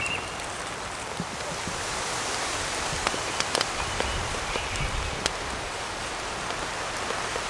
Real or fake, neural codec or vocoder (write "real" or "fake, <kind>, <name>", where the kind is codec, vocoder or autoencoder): real